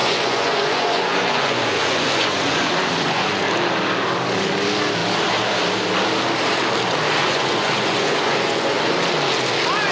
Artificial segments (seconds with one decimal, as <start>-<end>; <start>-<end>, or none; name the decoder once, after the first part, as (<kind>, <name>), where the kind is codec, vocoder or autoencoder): 0.0-3.4 (vocoder, Vocos); 7.2-8.9